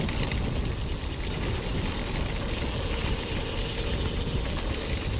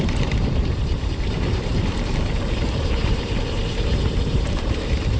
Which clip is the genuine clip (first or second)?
first